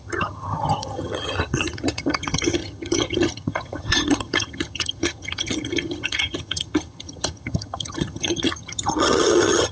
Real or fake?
fake